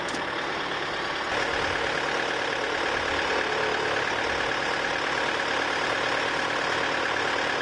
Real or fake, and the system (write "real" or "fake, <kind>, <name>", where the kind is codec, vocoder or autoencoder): real